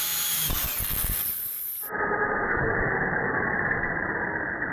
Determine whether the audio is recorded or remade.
remade